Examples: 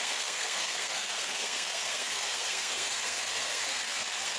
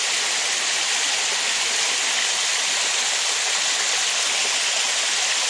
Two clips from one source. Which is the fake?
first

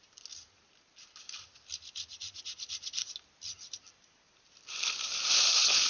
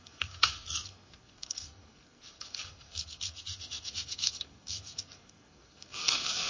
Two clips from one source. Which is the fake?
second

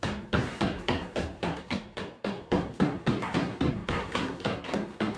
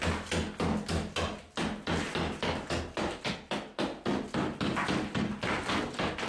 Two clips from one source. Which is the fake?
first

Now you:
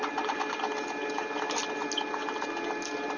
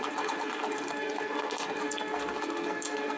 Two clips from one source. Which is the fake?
second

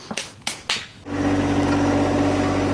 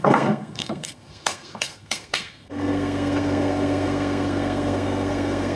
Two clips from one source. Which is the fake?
second